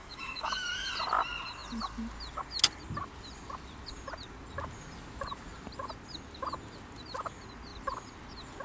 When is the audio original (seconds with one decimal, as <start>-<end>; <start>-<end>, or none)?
0.9-8.6